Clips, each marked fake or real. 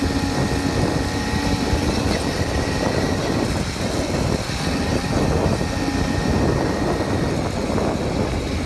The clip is real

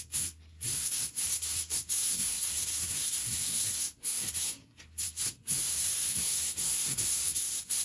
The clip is fake